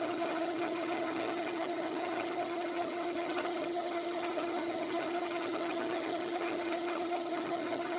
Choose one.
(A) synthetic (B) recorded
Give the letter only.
A